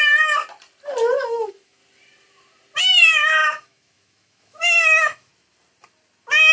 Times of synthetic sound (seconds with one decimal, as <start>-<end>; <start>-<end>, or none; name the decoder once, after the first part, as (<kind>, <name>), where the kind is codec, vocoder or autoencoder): 0.0-0.4 (autoencoder, DAC-VAE); 1.2-1.8; 2.8-5.3